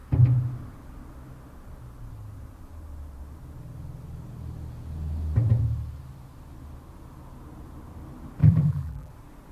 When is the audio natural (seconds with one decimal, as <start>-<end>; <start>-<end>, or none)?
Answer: 0.0-8.4; 9.1-9.5